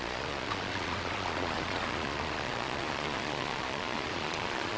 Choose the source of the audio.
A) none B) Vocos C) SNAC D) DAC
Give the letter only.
B